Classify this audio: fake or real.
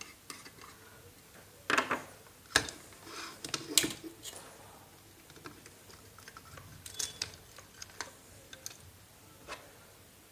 real